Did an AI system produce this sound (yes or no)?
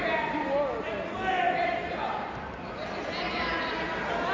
no